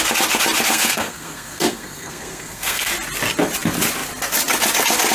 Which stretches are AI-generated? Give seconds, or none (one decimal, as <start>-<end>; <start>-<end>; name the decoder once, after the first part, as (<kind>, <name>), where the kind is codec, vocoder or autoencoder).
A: 0.7-2.9 (codec, SNAC)

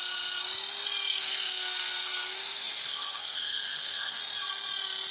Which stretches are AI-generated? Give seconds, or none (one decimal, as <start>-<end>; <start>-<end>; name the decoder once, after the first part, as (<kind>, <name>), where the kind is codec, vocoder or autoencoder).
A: 1.1-4.2 (codec, SNAC)

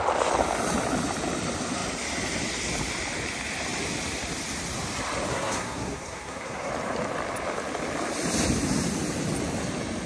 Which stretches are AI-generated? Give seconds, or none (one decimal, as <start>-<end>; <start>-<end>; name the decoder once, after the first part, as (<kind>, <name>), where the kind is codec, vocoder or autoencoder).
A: 5.3-6.7 (codec, SNAC)